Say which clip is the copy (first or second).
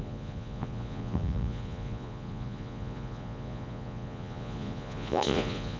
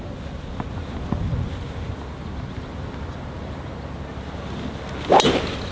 first